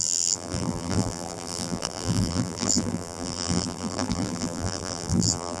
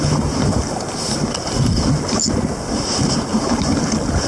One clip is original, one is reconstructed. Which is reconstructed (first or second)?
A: first